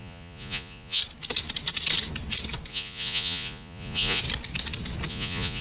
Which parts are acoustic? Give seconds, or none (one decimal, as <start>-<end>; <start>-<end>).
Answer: 1.0-2.7; 4.2-5.1